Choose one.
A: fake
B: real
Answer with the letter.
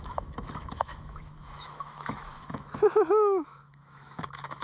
A